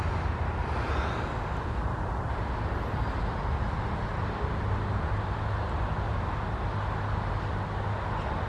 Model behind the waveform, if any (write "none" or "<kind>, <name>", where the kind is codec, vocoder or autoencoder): none